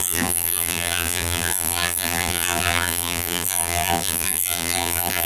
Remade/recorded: remade